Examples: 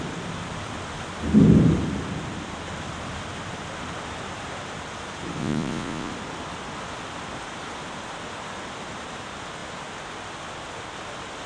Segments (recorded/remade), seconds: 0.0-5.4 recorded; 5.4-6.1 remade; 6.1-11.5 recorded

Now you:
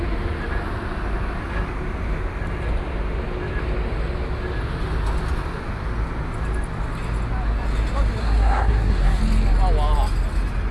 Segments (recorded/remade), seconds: 0.0-8.2 recorded; 8.2-9.2 remade; 9.2-10.7 recorded

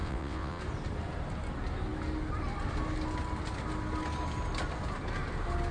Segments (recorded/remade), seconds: 0.0-0.6 remade; 0.6-5.7 recorded

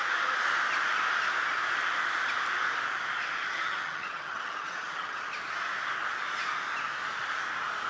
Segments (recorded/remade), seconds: 0.0-3.4 recorded; 3.4-5.2 remade; 5.2-7.9 recorded

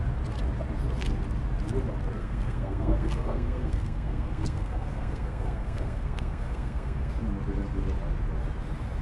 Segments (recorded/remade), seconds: 0.0-2.2 recorded; 2.2-7.1 remade; 7.1-9.0 recorded

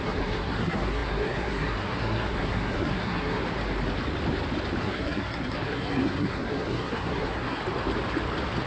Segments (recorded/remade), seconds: 0.0-3.4 remade; 3.4-4.8 recorded; 4.8-7.6 remade; 7.6-8.7 recorded

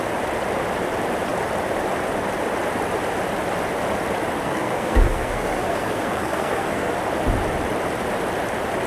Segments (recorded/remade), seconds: 0.0-4.4 recorded; 4.4-6.9 remade; 6.9-8.9 recorded